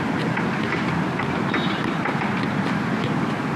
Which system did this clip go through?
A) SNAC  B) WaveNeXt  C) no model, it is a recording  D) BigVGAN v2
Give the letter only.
C